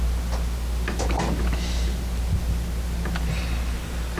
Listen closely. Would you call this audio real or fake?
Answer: real